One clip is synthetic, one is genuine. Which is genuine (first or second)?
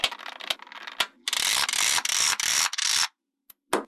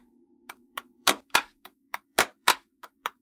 first